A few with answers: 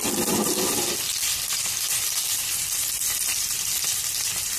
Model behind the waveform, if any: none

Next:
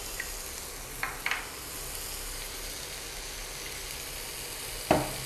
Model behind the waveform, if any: none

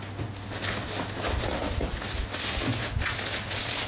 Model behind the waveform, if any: none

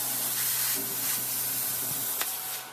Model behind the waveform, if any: none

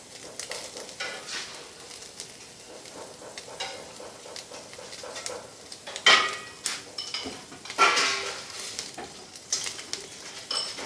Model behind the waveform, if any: none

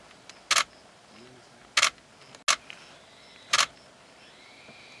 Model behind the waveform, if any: none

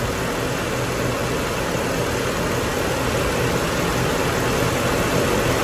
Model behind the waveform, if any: none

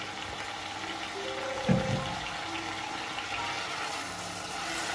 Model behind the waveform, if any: none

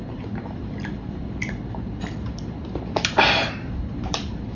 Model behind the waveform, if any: vocoder, BigVGAN v2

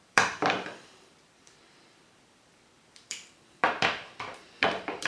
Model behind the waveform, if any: vocoder, BigVGAN v2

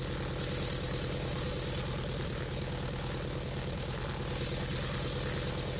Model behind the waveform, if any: none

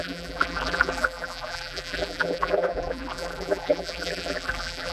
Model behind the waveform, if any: vocoder, BigVGAN v2